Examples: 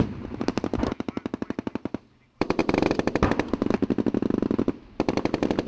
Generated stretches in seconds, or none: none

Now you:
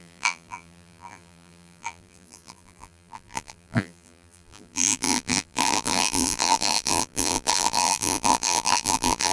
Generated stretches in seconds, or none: 0.0-9.3 (vocoder, BigVGAN v2)

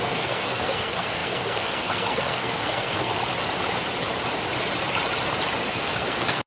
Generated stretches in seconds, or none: 0.0-3.1 (codec, SNAC); 5.7-6.5

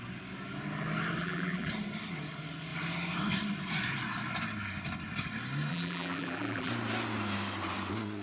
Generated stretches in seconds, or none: 1.2-1.7 (vocoder, BigVGAN v2); 5.7-6.7

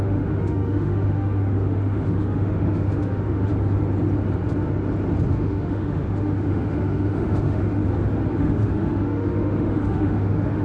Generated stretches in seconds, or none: 0.0-3.5 (autoencoder, DAC-VAE); 5.3-7.8; 8.4-10.6

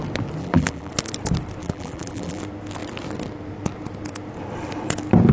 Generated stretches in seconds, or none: 0.4-0.9 (vocoder, BigVGAN v2); 1.6-2.4

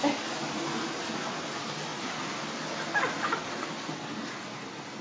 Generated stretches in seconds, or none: none

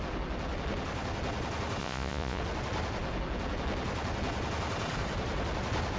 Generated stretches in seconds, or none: 1.8-2.4 (vocoder, Vocos)